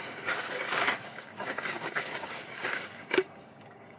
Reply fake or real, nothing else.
fake